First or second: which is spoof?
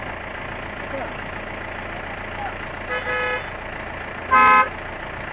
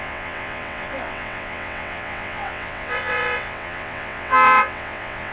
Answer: second